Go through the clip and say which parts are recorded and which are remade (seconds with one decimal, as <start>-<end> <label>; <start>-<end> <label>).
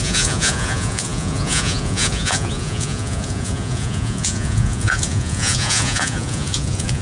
0.0-7.0 remade